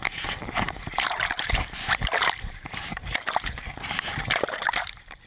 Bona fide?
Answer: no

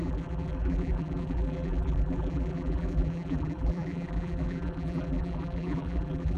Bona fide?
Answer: no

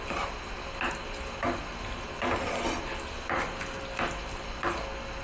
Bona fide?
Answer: yes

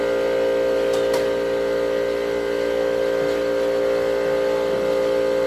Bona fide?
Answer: yes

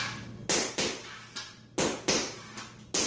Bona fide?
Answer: yes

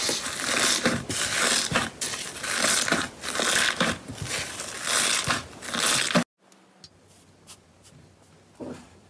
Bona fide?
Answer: yes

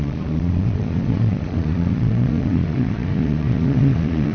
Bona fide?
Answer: no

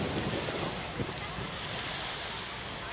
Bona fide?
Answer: yes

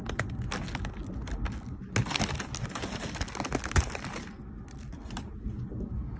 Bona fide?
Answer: yes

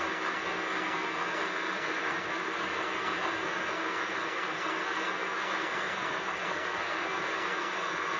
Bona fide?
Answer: no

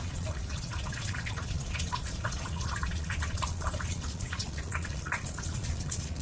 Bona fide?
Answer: no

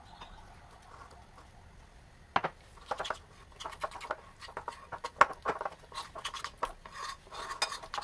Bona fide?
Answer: yes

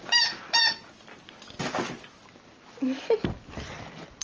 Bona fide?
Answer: yes